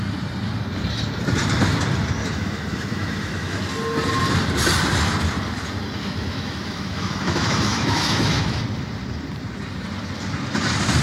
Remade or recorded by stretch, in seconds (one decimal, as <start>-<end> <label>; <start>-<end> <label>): 0.0-2.2 recorded; 2.2-3.6 remade; 3.6-6.0 recorded; 6.0-8.6 remade; 8.6-11.0 recorded